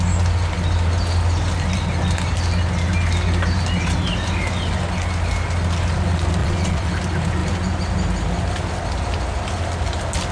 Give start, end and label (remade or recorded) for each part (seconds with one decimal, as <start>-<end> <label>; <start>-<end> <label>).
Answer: 0.0-6.4 recorded; 6.4-6.9 remade; 6.9-10.3 recorded